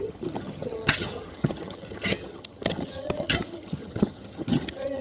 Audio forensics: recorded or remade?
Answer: remade